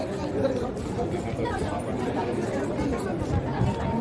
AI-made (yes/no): no